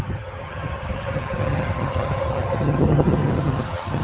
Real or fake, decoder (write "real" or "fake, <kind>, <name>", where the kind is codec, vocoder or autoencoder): fake, vocoder, HiFi-GAN